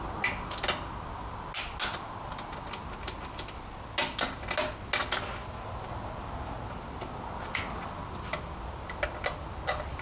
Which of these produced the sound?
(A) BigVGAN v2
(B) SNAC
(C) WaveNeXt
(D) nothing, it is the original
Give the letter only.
D